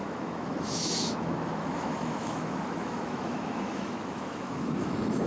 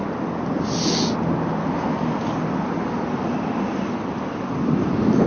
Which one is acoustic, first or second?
second